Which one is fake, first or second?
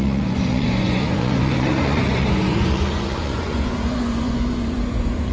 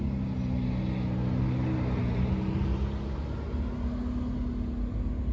first